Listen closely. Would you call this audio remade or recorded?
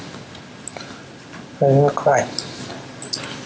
recorded